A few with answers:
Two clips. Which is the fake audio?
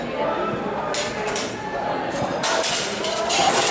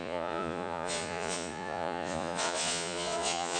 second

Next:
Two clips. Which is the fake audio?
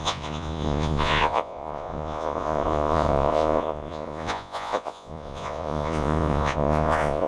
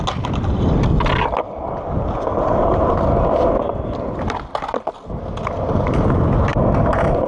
first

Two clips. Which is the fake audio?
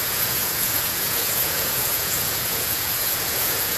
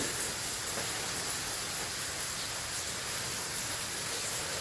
first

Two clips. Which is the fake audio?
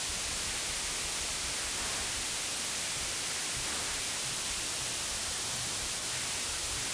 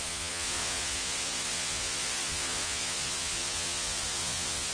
second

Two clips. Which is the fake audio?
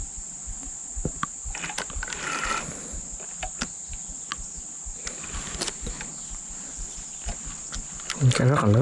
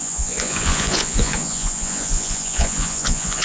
second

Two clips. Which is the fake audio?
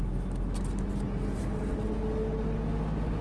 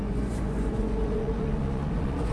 second